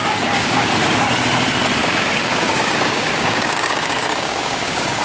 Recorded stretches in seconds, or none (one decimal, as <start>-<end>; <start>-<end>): 0.7-1.8